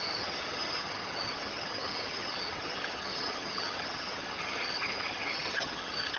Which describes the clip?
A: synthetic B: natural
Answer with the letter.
A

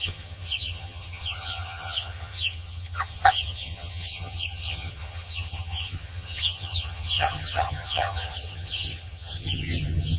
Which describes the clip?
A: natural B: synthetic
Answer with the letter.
B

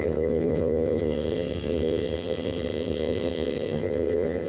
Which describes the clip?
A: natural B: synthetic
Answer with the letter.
B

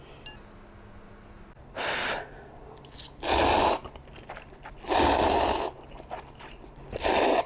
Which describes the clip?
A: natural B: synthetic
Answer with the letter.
A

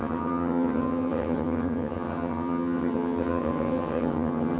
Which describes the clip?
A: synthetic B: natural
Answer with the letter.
A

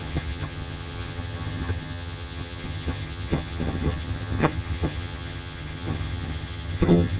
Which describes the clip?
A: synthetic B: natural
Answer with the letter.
A